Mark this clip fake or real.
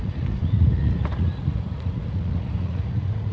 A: fake